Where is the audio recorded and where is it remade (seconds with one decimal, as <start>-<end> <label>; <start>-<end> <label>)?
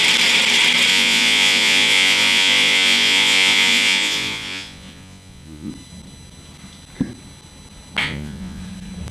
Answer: 0.0-0.9 recorded; 0.9-5.7 remade; 5.7-8.0 recorded; 8.0-8.6 remade; 8.6-9.1 recorded